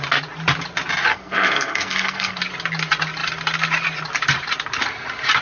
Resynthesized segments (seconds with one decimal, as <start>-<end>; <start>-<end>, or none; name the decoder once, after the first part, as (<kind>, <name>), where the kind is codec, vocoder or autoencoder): 1.1-2.4 (codec, SNAC)